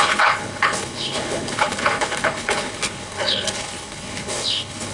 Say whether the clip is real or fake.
fake